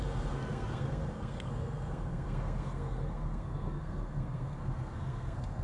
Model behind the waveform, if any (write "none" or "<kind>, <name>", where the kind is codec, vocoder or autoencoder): codec, SNAC